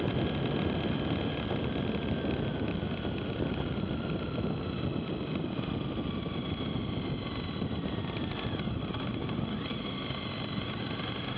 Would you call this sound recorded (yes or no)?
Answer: yes